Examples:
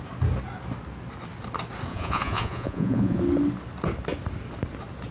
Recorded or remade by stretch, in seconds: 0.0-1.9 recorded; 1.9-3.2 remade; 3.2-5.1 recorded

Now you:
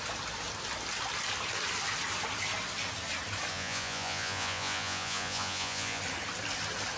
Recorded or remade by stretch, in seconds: 0.0-3.5 recorded; 3.5-6.0 remade; 6.0-7.0 recorded

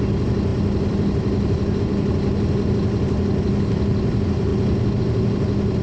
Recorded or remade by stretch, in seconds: 0.0-5.8 recorded

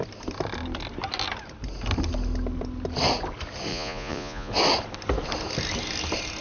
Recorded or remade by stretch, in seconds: 0.0-3.7 recorded; 3.7-4.5 remade; 4.5-6.4 recorded

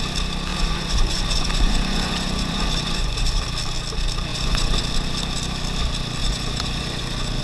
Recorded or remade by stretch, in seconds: 0.0-0.5 recorded; 0.5-3.4 remade; 3.4-4.3 recorded; 4.3-4.8 remade; 4.8-6.2 recorded; 6.2-7.4 remade